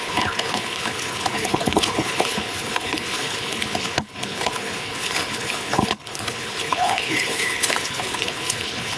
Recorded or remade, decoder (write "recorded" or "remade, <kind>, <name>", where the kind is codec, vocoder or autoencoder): remade, codec, HILCodec